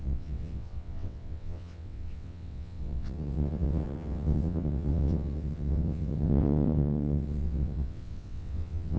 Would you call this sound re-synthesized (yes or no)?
yes